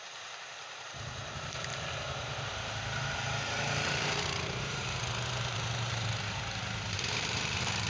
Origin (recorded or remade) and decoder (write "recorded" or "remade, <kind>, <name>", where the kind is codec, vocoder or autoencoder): remade, vocoder, BigVGAN v2